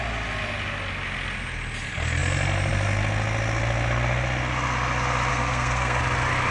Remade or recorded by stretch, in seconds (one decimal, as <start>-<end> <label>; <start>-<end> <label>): 0.0-5.3 recorded; 5.3-6.0 remade; 6.0-6.5 recorded